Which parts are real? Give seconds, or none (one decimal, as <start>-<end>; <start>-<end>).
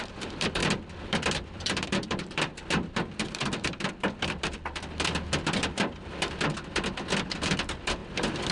8.0-8.5